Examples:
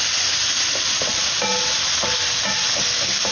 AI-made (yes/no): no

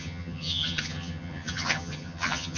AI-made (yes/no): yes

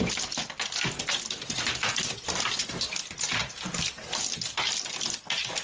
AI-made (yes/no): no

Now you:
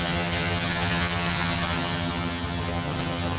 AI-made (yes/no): yes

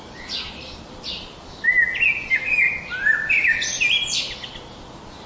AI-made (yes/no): no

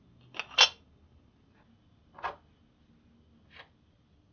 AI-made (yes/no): no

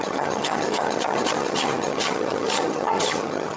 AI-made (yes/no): yes